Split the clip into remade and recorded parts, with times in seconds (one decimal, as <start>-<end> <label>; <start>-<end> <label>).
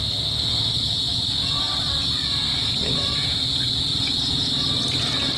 0.0-5.4 recorded